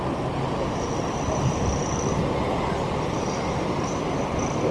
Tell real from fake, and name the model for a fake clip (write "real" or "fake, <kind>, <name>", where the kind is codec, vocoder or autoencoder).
real